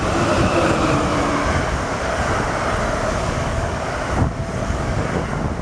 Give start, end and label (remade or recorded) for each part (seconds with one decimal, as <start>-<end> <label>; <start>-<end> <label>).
0.0-3.2 recorded; 3.2-4.1 remade; 4.1-4.6 recorded; 4.6-5.1 remade; 5.1-5.6 recorded